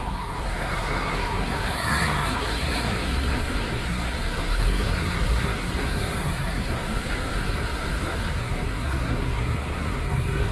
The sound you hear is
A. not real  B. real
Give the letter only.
A